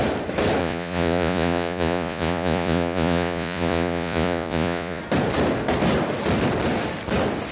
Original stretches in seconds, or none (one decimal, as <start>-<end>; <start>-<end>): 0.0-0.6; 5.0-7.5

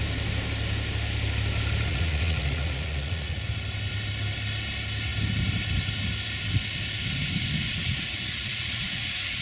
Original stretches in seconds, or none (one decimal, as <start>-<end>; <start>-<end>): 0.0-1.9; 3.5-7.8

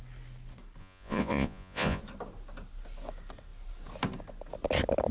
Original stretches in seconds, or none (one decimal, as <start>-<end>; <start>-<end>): 0.0-0.8; 2.0-5.1

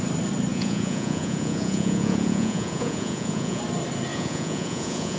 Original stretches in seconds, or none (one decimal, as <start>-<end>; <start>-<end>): 0.0-0.5; 3.6-4.1